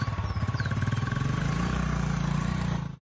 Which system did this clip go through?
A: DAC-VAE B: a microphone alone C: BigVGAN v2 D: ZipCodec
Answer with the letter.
C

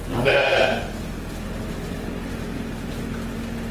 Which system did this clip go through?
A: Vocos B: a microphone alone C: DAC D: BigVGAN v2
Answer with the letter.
B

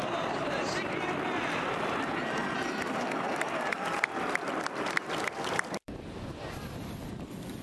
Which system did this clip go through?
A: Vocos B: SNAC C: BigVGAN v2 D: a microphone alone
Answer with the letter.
C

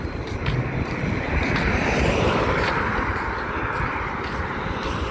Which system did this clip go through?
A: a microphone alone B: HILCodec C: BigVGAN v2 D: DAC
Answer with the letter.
C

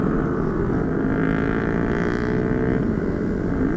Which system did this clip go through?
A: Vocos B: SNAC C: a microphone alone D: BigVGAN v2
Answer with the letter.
C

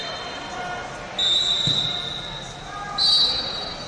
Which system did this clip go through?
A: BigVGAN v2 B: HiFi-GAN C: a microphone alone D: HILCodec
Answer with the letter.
C